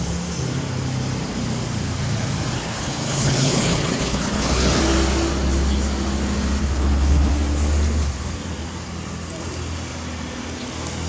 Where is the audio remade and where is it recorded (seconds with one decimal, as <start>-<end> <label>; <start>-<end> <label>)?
0.0-2.6 recorded; 2.6-4.8 remade; 4.8-6.6 recorded; 6.6-7.3 remade; 7.3-11.1 recorded